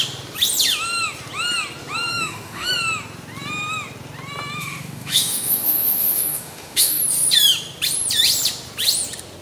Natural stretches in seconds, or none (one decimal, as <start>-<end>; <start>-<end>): 0.0-2.1; 2.7-4.6; 7.0-9.4